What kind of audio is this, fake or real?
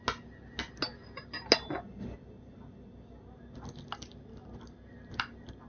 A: real